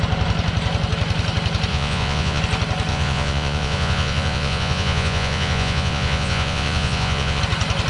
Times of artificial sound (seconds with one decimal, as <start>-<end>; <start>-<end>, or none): 1.7-2.4; 2.9-7.4